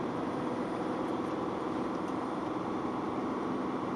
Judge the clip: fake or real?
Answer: fake